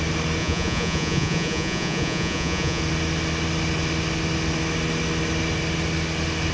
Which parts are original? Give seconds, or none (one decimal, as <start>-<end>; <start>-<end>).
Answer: 0.0-0.4; 2.8-6.5